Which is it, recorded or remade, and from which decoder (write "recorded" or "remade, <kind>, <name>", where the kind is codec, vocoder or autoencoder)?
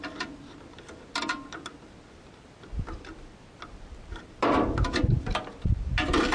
recorded